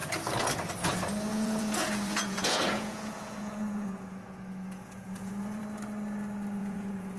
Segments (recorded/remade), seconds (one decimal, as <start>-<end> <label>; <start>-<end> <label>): 0.0-1.3 recorded; 1.3-5.6 remade; 5.6-6.6 recorded; 6.6-7.2 remade